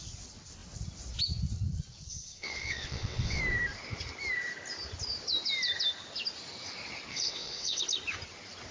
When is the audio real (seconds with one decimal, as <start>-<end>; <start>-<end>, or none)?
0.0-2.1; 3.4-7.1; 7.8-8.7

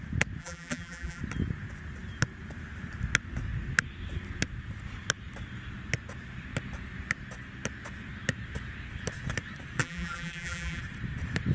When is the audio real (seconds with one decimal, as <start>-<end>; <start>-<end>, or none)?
0.0-0.4; 1.2-9.8; 10.8-11.5

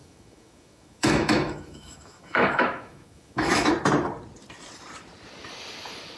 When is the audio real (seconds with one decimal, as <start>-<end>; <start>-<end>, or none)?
3.7-6.2

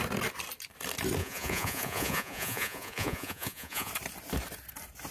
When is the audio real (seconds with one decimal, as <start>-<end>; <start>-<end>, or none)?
0.0-1.2; 3.9-5.1

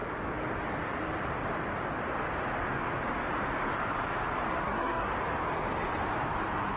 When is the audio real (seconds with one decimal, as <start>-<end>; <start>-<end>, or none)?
0.0-4.6; 5.1-6.8